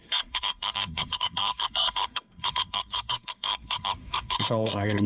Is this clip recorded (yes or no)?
no